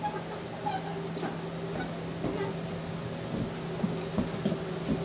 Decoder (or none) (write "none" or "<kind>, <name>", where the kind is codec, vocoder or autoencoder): none